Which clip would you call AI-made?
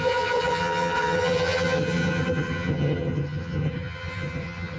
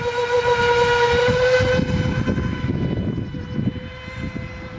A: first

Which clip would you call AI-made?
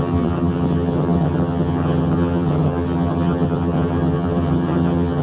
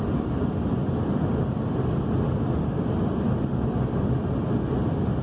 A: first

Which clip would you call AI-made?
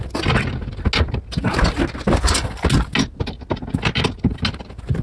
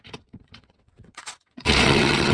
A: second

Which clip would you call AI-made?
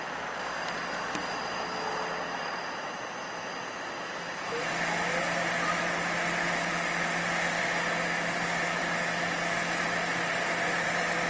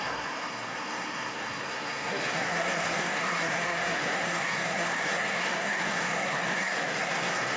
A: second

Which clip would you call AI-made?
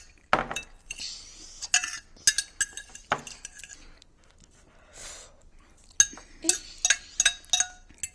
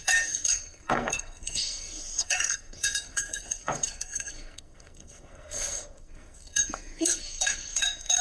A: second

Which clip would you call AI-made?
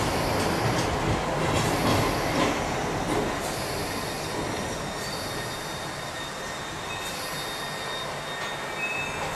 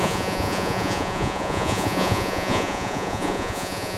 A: second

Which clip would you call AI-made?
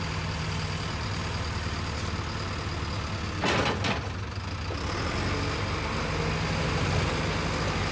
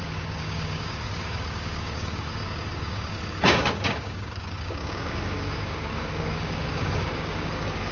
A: second